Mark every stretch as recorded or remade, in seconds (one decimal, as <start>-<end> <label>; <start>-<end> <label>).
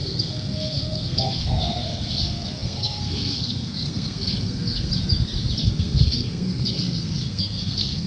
0.0-4.9 remade; 4.9-5.6 recorded; 5.6-8.1 remade